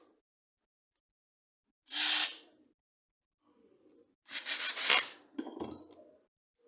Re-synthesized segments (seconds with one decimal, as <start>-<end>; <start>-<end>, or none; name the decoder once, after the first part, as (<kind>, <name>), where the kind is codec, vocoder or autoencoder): none